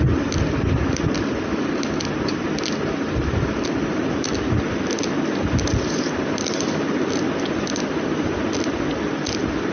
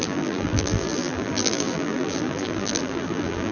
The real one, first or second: first